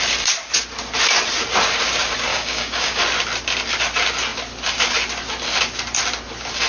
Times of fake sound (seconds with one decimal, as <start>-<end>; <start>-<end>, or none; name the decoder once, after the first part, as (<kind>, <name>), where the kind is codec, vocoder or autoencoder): 2.3-3.0 (codec, DAC)